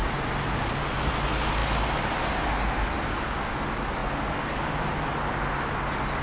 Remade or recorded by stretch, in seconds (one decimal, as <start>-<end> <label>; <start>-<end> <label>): 0.0-6.2 recorded